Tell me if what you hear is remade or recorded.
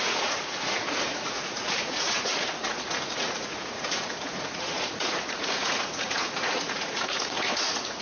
remade